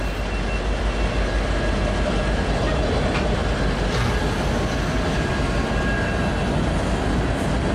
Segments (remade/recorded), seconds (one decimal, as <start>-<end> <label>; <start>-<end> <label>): 0.0-7.7 recorded